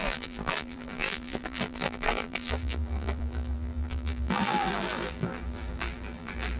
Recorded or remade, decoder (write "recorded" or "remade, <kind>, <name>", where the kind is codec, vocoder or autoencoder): remade, vocoder, BigVGAN v2